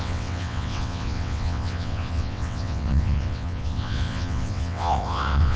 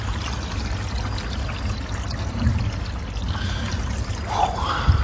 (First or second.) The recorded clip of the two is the second